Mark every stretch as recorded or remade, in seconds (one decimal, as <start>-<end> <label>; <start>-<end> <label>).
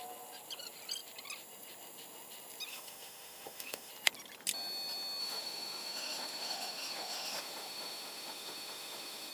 0.0-2.7 recorded; 2.7-3.9 remade; 3.9-5.2 recorded; 5.2-9.3 remade